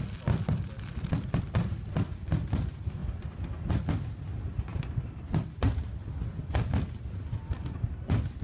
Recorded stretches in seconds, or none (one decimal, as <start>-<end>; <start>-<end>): 0.0-8.4